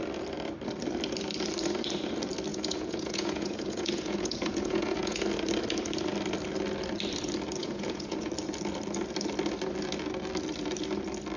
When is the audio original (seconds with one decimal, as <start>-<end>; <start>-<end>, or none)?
0.0-2.5; 5.2-7.6; 8.3-11.4